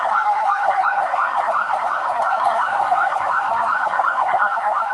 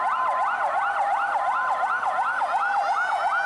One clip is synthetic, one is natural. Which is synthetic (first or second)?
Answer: first